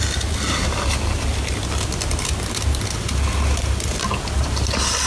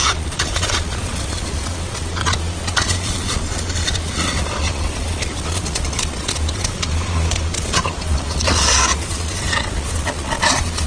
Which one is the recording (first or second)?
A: first